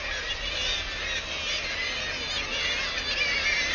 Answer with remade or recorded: recorded